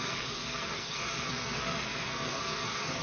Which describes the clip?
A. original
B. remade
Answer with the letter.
B